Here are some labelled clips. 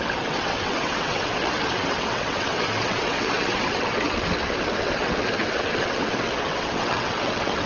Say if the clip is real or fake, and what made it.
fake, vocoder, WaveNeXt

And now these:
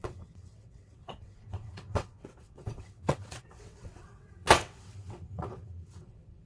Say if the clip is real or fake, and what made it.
fake, vocoder, WaveNeXt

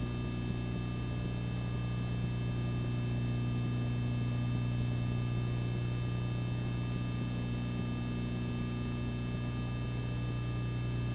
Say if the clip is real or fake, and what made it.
real